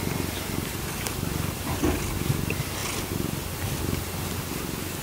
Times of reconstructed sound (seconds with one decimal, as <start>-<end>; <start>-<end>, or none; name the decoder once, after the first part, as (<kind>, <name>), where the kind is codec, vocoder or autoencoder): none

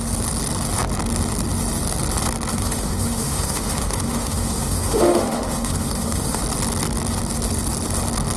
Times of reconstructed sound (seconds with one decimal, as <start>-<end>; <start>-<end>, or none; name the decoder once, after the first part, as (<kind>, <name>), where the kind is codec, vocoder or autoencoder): 2.5-6.4 (autoencoder, DAC-VAE)

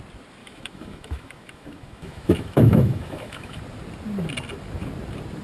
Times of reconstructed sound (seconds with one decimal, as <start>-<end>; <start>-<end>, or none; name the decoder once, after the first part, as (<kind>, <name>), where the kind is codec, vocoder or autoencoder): 0.4-3.6 (autoencoder, DAC-VAE)